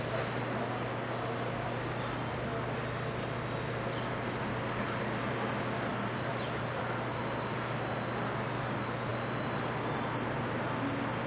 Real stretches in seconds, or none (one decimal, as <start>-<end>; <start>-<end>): 0.0-11.3